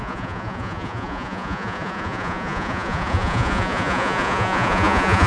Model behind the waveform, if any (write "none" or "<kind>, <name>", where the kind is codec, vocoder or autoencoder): vocoder, Vocos